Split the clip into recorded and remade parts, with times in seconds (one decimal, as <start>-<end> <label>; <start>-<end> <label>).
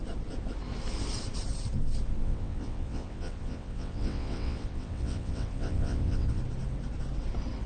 0.0-2.2 recorded; 2.2-6.4 remade; 6.4-7.7 recorded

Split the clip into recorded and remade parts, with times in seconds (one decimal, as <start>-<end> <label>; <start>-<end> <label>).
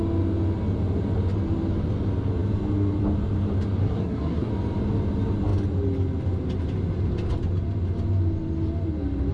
0.0-3.8 recorded; 3.8-4.5 remade; 4.5-9.3 recorded